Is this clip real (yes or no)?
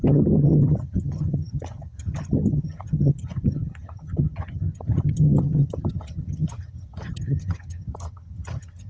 no